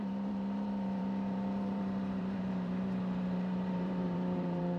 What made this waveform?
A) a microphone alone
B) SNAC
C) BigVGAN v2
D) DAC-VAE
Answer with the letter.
C